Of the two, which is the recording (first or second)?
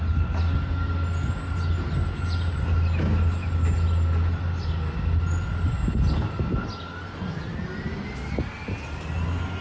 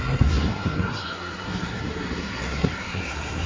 first